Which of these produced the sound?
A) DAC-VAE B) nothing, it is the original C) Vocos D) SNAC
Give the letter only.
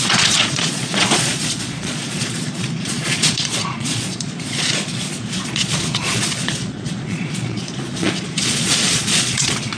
C